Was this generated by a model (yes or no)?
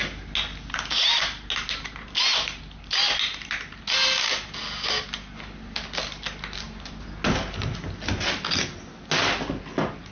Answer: no